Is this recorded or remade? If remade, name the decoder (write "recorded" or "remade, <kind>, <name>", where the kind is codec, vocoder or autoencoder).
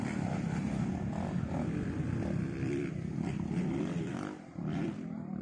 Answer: remade, vocoder, BigVGAN v2